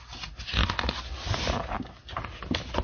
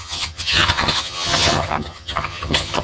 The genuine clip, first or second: first